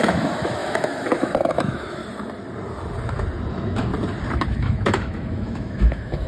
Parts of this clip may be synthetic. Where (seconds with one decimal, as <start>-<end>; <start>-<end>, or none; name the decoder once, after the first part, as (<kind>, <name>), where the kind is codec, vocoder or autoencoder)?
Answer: 0.0-2.0 (autoencoder, DAC-VAE); 3.5-3.9; 4.6-6.3